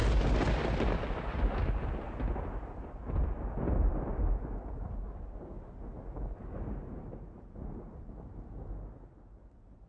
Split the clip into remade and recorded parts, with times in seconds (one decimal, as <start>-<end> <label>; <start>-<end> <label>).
0.0-9.9 recorded